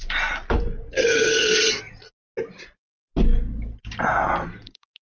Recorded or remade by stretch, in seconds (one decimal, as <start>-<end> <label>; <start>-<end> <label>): 0.0-5.0 recorded